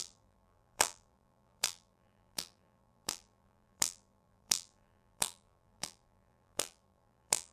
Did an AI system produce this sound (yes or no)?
yes